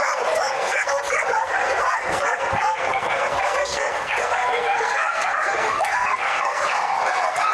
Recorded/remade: remade